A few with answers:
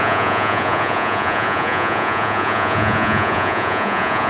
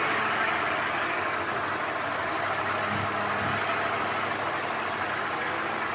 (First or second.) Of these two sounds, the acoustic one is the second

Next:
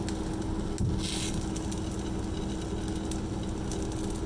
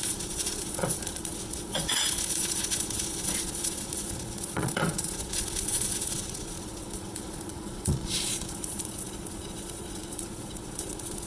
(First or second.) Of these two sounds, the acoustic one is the first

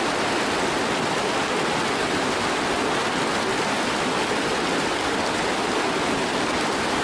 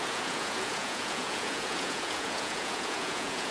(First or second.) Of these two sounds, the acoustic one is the first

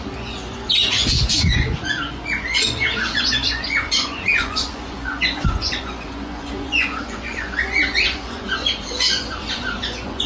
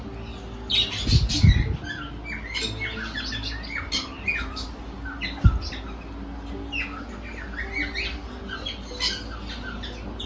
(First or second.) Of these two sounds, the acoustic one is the second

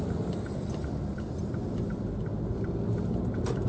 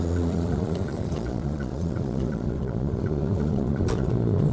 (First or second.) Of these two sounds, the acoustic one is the first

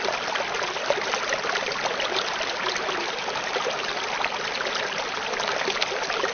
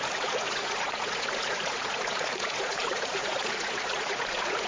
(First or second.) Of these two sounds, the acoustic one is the first